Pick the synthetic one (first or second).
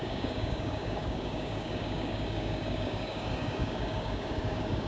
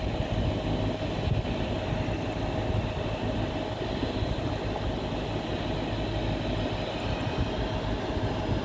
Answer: first